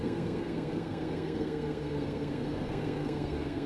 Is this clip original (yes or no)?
no